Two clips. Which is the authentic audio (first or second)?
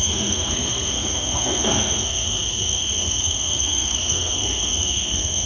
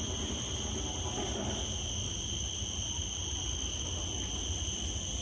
second